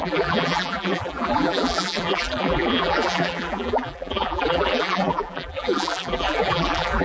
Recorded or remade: remade